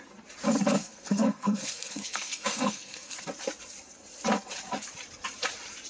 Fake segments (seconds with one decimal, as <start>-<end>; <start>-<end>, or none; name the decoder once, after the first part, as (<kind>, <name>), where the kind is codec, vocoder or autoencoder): 0.8-3.2 (codec, SNAC)

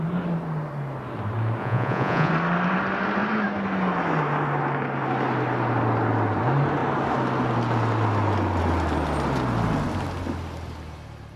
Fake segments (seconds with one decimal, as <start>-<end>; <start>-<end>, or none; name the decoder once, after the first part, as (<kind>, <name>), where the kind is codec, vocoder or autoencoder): 1.6-2.3 (vocoder, Vocos)

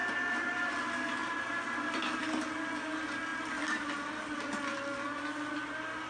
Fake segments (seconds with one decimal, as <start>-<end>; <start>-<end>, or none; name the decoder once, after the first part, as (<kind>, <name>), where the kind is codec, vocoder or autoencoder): 0.0-0.7 (vocoder, BigVGAN v2); 1.2-2.2

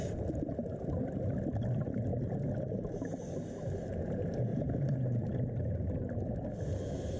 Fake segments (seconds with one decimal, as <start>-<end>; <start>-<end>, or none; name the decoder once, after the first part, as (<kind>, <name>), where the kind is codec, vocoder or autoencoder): 4.5-5.4 (vocoder, BigVGAN v2)

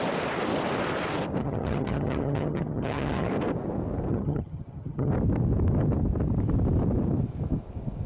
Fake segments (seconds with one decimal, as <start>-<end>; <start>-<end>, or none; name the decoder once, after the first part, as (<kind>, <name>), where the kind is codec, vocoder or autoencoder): 1.4-3.3 (vocoder, HiFi-GAN); 4.1-5.1

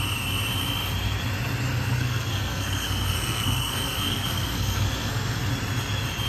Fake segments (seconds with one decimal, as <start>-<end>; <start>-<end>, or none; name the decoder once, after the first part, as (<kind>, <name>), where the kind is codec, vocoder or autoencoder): 1.7-5.5 (codec, SNAC)